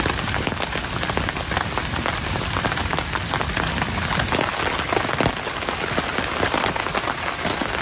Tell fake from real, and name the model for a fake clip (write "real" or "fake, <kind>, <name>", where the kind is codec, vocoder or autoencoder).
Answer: real